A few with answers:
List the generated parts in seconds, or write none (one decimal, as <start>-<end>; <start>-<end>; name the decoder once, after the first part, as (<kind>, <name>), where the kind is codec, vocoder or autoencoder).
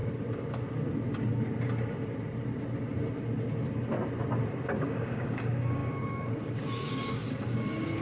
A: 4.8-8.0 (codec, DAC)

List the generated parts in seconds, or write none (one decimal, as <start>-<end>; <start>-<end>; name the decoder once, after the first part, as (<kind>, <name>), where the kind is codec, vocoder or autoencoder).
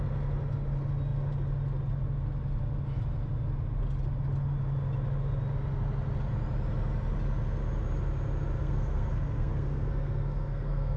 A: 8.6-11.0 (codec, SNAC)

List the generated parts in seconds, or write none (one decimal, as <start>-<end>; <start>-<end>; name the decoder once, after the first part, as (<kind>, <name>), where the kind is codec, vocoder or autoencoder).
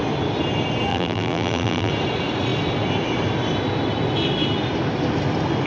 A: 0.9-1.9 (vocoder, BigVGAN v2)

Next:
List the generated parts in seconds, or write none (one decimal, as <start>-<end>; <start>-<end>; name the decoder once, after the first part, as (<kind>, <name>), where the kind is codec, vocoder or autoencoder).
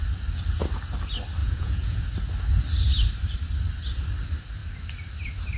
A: 1.4-2.0 (vocoder, Vocos)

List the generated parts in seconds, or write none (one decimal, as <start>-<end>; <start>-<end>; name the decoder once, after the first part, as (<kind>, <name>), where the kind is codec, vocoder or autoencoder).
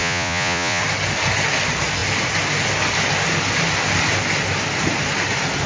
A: 0.0-0.8 (vocoder, Vocos)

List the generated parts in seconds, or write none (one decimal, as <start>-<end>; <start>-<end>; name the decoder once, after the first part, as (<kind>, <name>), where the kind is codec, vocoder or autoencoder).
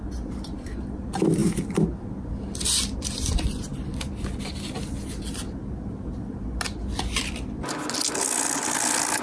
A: none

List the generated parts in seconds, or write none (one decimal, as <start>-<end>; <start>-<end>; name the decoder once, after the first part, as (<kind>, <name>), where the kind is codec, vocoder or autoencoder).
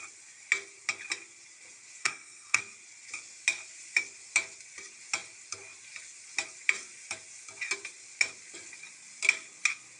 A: 2.0-2.6 (codec, SNAC)